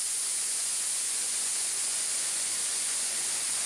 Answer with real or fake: fake